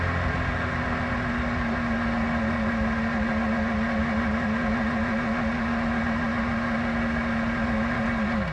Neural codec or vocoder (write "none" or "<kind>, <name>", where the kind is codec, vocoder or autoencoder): none